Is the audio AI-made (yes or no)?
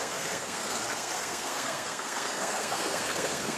yes